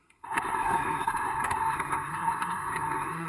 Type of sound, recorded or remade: remade